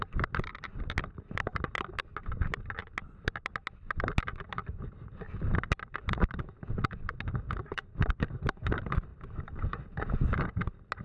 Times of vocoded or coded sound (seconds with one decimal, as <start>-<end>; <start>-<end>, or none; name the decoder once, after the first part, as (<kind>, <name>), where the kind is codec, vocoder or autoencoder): 7.6-8.3 (vocoder, BigVGAN v2); 9.1-10.1